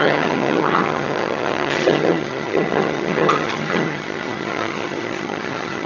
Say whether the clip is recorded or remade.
remade